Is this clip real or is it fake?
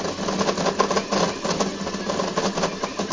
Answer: real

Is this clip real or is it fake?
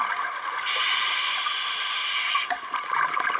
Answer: real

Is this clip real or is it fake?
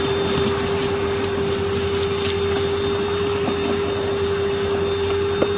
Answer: real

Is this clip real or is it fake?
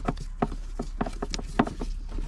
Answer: real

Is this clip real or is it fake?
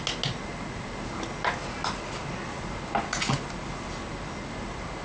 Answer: real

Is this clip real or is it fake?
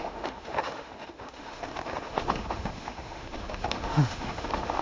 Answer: fake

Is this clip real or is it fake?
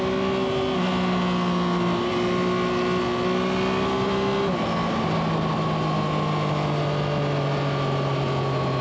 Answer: real